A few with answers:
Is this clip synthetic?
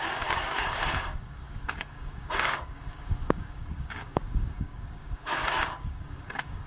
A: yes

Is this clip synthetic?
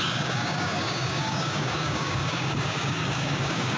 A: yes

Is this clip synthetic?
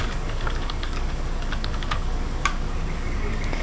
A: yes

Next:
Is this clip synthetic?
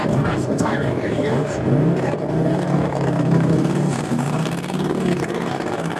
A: yes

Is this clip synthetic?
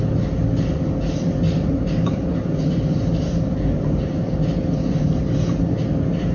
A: no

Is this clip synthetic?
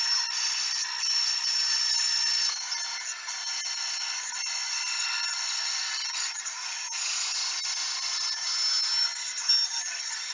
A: no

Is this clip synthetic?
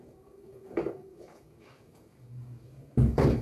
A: yes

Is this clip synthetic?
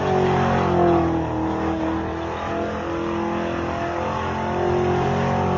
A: no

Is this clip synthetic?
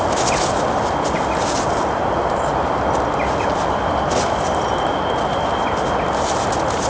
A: no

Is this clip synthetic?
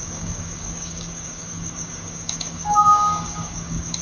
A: yes